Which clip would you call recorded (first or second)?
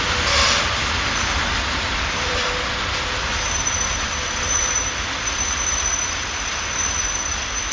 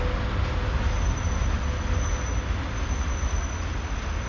second